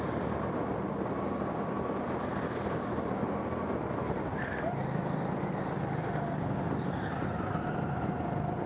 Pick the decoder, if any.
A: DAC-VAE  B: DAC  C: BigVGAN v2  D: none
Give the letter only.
D